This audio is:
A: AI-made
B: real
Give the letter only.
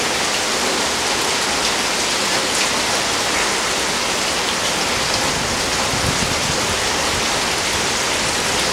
B